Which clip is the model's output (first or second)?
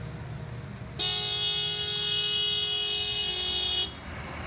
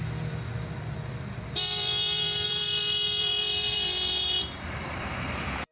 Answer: second